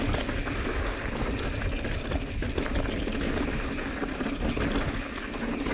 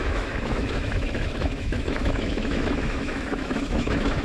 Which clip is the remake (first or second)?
second